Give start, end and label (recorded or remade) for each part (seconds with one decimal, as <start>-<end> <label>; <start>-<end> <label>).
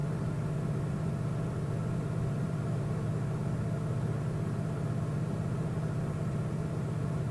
0.0-7.3 recorded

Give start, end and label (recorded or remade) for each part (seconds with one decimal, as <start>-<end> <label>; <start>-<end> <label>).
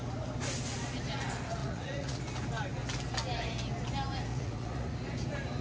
0.0-1.6 recorded; 1.6-2.2 remade; 2.2-4.3 recorded; 4.3-4.9 remade; 4.9-5.6 recorded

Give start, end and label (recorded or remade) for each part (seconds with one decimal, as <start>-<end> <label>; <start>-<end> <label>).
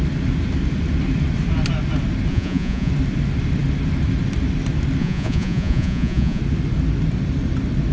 0.0-2.3 recorded; 2.3-2.9 remade; 2.9-5.0 recorded; 5.0-6.4 remade; 6.4-7.9 recorded